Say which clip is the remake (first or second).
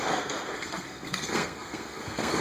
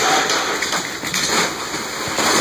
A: first